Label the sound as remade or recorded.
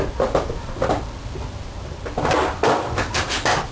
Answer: recorded